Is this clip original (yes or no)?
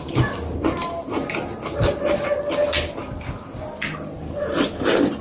yes